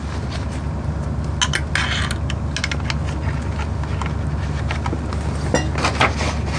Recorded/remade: recorded